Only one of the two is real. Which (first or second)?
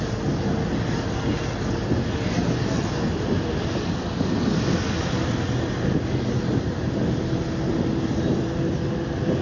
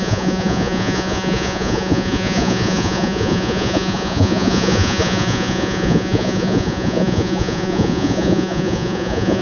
first